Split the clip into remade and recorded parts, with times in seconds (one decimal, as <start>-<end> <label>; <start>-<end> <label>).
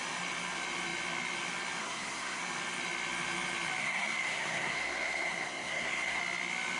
0.0-1.8 recorded; 1.8-2.4 remade; 2.4-3.8 recorded; 3.8-6.2 remade; 6.2-6.8 recorded